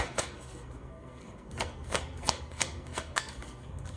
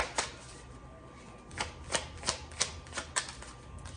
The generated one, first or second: first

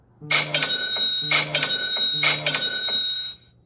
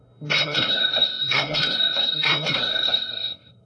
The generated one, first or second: second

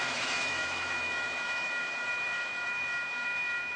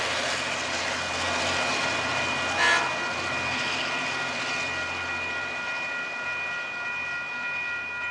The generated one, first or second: first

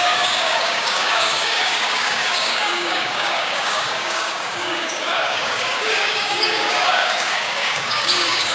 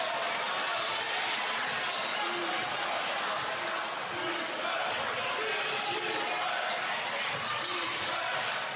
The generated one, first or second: first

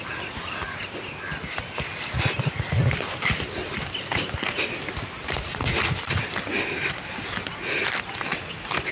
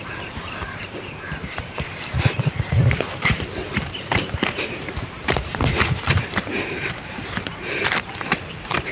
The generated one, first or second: second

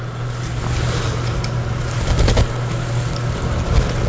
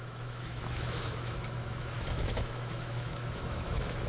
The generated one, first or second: second